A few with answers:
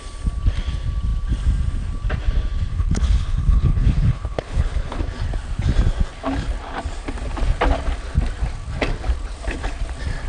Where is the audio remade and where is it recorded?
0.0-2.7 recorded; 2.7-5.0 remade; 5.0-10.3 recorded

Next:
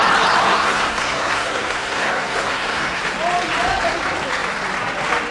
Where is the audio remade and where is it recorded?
0.0-0.4 recorded; 0.4-3.0 remade; 3.0-5.3 recorded

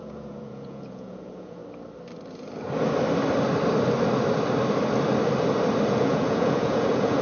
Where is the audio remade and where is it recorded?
0.0-1.6 remade; 1.6-5.9 recorded; 5.9-7.2 remade